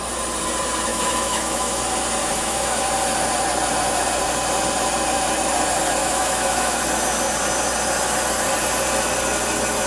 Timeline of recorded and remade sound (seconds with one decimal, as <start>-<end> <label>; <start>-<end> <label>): 0.0-0.9 recorded; 0.9-1.8 remade; 1.8-2.2 recorded; 2.2-2.8 remade; 2.8-6.0 recorded; 6.0-6.8 remade; 6.8-9.9 recorded